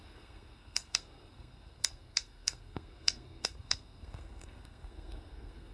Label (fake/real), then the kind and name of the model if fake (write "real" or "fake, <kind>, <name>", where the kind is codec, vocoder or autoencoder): fake, codec, SNAC